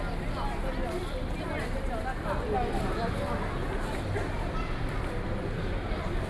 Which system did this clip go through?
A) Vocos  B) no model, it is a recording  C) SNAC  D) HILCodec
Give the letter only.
B